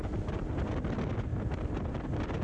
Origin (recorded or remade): recorded